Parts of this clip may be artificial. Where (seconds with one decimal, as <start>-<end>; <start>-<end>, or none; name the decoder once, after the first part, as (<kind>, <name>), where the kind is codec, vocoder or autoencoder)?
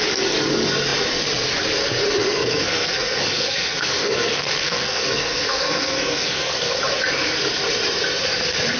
2.2-6.8 (codec, SNAC)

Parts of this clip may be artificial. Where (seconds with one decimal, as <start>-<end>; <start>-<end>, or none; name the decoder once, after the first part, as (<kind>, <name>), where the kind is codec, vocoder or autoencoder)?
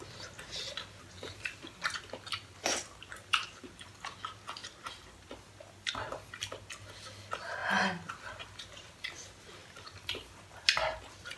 none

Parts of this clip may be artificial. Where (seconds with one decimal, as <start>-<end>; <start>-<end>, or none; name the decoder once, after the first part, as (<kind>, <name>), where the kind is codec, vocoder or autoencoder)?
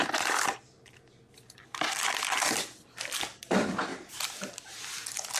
3.9-4.7 (vocoder, BigVGAN v2)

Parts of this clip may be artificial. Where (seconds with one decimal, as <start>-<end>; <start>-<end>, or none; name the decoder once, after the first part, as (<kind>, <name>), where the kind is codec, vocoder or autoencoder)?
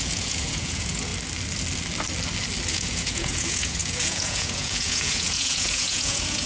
0.0-1.1 (vocoder, Vocos); 2.7-6.5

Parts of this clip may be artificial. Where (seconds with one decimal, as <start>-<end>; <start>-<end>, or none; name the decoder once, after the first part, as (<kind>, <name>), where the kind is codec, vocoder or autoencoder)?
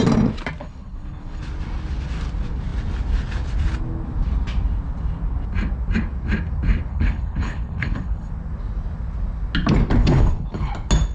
0.6-1.4 (codec, HILCodec); 6.9-8.3; 10.0-10.7